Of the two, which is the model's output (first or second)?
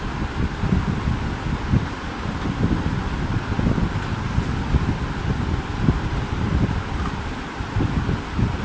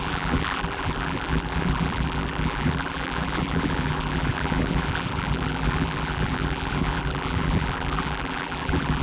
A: second